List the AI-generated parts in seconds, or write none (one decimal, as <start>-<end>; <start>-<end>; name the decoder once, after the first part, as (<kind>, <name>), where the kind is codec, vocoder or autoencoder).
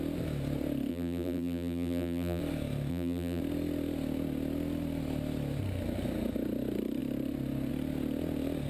0.9-2.4 (vocoder, BigVGAN v2); 2.9-3.4